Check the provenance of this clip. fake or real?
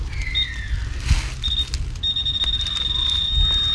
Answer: real